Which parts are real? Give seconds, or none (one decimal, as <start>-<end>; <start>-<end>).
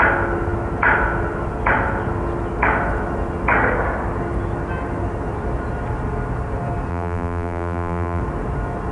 0.0-6.9; 8.2-8.9